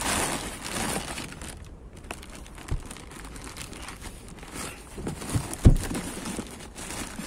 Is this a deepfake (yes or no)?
no